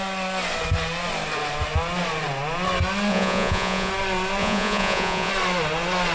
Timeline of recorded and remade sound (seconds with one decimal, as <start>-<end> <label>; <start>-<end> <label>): 0.0-3.1 recorded; 3.1-3.9 remade; 3.9-4.4 recorded; 4.4-5.3 remade; 5.3-6.1 recorded